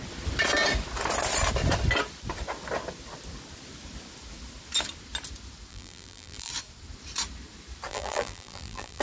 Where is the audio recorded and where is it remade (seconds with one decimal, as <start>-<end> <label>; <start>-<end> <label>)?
0.0-5.7 recorded; 5.7-6.5 remade; 6.5-7.9 recorded; 7.9-9.0 remade